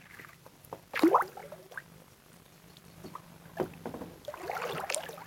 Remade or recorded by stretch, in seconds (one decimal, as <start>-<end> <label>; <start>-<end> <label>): 0.0-1.4 recorded; 1.4-3.5 remade; 3.5-5.3 recorded